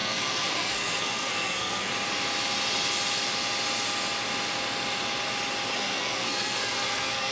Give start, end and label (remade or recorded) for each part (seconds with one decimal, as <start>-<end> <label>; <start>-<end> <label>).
0.0-1.9 remade; 1.9-5.7 recorded; 5.7-7.3 remade